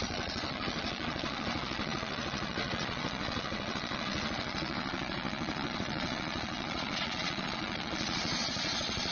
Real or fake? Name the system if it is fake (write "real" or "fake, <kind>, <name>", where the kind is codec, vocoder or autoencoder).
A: fake, vocoder, Vocos